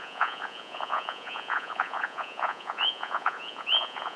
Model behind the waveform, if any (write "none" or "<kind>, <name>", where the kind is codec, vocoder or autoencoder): vocoder, Vocos